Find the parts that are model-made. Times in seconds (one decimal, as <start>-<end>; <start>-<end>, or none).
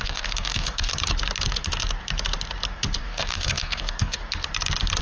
0.0-0.9; 3.0-4.2